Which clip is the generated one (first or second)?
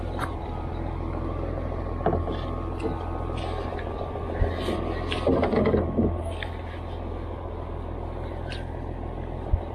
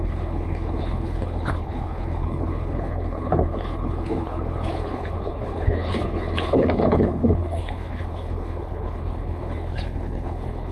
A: second